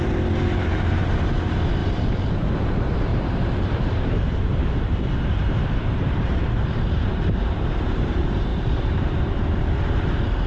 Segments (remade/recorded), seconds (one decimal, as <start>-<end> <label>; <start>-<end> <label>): 0.0-10.5 remade